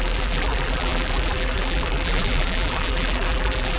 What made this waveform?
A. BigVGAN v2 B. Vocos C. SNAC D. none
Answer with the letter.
A